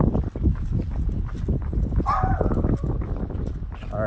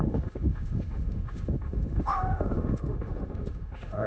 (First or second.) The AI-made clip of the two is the second